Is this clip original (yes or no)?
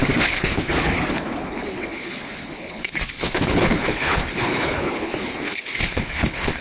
no